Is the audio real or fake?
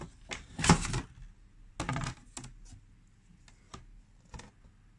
real